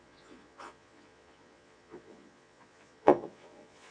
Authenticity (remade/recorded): remade